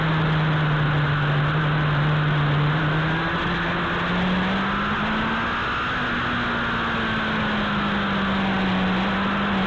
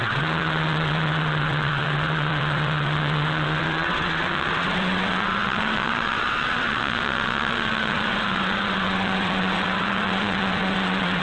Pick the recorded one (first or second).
first